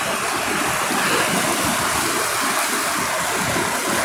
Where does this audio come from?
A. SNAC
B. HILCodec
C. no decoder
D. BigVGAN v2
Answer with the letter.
C